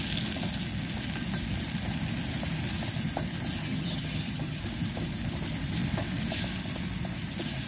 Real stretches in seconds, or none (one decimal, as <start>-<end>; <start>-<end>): 0.0-3.6; 4.6-7.7